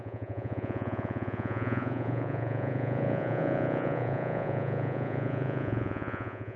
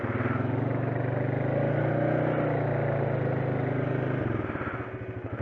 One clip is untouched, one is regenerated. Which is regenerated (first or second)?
first